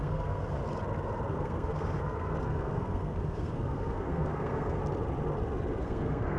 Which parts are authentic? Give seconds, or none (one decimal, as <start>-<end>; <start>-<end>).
0.6-1.3; 4.8-5.8